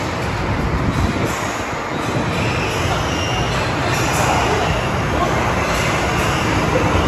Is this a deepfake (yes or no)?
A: no